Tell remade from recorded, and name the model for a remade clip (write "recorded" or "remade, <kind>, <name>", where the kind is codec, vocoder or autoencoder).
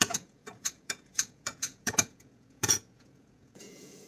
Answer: remade, vocoder, Vocos